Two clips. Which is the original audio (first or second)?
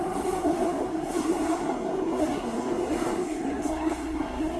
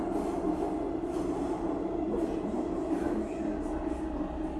second